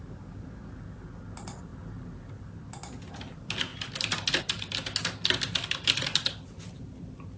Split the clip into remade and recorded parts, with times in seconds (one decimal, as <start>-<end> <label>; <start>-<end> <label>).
0.0-7.4 recorded